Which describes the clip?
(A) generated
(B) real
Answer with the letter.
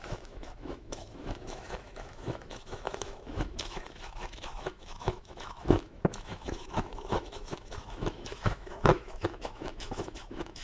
A